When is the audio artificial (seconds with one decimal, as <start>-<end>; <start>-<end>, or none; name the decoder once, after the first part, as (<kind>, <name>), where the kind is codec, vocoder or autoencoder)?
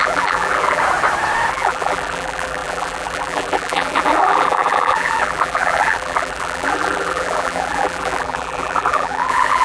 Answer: 0.0-0.8 (vocoder, BigVGAN v2); 1.5-9.6